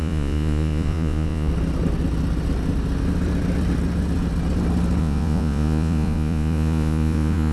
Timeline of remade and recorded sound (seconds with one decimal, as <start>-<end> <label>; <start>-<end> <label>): 0.0-1.5 remade; 1.5-5.0 recorded; 5.0-7.5 remade